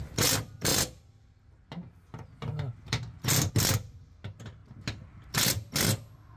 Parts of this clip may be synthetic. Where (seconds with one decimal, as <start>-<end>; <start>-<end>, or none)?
none